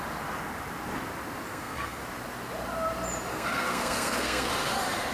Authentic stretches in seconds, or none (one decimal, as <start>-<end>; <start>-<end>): 0.0-1.5; 2.0-3.3; 4.5-5.1